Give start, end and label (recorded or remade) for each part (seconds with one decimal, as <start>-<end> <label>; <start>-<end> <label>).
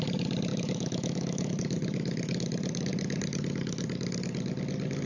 0.0-0.5 recorded; 0.5-1.5 remade; 1.5-5.1 recorded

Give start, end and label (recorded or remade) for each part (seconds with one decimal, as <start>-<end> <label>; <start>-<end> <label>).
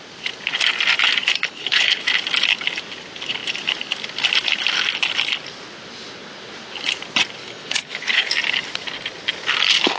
0.0-1.4 recorded; 1.4-2.0 remade; 2.0-7.4 recorded; 7.4-8.3 remade; 8.3-10.0 recorded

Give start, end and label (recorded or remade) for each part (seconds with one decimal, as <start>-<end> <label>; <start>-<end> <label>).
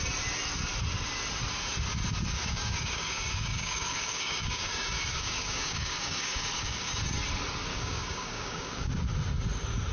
0.0-2.4 recorded; 2.4-6.9 remade; 6.9-7.7 recorded; 7.7-8.9 remade; 8.9-9.9 recorded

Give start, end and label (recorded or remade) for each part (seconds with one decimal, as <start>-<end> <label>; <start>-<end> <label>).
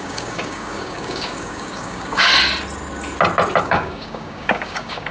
0.0-2.3 remade; 2.3-3.6 recorded; 3.6-5.1 remade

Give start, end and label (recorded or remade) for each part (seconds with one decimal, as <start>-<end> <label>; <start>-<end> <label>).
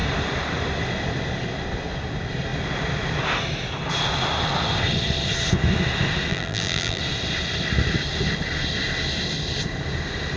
0.0-6.3 recorded; 6.3-7.0 remade; 7.0-10.4 recorded